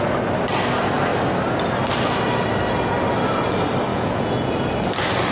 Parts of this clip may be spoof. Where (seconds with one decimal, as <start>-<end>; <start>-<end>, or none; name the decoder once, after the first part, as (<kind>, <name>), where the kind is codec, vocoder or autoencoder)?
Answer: 3.9-4.5 (vocoder, Vocos)